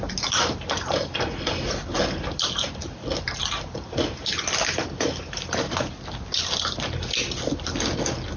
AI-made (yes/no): no